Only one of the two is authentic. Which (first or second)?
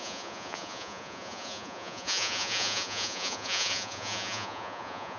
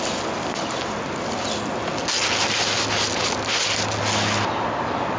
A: second